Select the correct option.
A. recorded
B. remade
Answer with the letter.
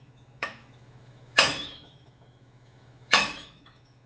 B